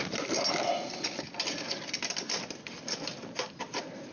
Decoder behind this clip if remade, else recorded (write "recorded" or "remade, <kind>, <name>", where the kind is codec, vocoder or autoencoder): recorded